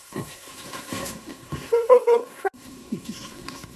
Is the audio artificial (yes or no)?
yes